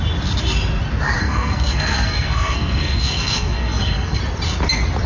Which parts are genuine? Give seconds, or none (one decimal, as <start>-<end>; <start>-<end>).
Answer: 0.0-1.2; 4.2-5.1